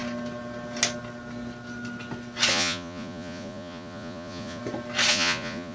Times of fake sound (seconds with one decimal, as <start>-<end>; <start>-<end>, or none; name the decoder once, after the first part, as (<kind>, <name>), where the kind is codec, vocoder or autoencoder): 2.5-4.6 (vocoder, Vocos); 5.1-5.7